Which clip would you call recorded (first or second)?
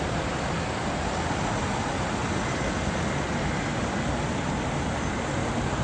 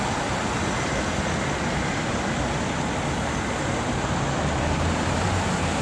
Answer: first